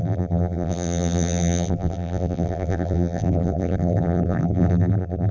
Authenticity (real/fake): fake